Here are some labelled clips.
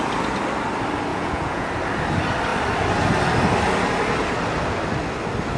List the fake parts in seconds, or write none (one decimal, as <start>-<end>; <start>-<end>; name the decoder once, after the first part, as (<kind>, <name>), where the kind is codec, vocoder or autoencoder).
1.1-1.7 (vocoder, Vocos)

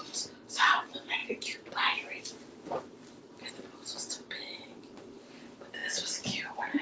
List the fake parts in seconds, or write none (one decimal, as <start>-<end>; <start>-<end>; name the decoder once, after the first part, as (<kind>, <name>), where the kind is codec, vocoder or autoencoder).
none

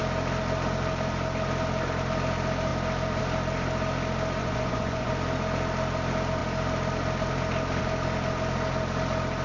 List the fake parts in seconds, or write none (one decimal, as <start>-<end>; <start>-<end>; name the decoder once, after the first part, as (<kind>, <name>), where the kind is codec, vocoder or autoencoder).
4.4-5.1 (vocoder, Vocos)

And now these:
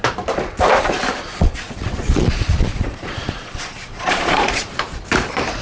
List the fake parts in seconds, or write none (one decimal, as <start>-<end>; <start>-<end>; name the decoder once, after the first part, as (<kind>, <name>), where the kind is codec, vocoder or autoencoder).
1.3-4.7 (vocoder, Vocos)

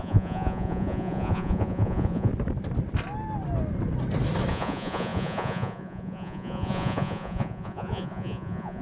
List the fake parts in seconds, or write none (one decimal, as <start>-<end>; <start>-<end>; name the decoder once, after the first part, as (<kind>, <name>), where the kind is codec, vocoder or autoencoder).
0.0-2.3 (vocoder, Vocos); 4.5-8.8